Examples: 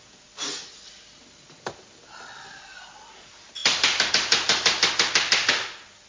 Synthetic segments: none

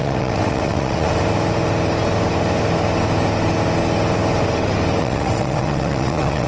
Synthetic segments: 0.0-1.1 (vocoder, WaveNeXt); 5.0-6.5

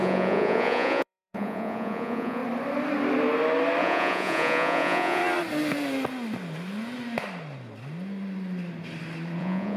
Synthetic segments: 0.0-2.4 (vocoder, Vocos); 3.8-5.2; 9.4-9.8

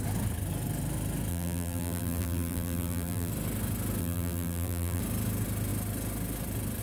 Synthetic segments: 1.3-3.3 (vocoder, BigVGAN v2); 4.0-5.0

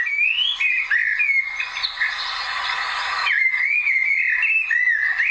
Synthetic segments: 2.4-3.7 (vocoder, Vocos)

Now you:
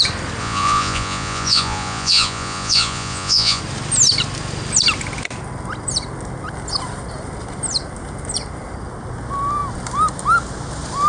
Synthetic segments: 0.4-3.6 (vocoder, Vocos)

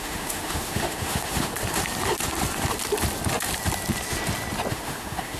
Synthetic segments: 0.0-1.5 (autoencoder, DAC-VAE); 4.7-5.4

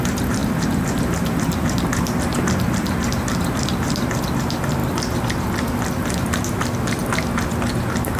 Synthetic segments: 0.0-7.0 (vocoder, BigVGAN v2)